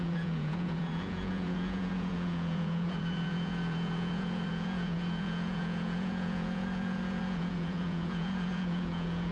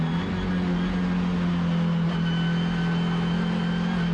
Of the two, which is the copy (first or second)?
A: first